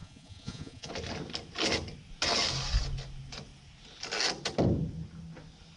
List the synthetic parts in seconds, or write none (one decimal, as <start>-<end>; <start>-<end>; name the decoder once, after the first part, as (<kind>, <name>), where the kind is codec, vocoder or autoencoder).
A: 0.0-0.9 (vocoder, Vocos)